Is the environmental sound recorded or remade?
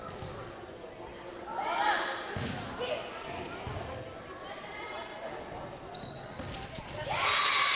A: recorded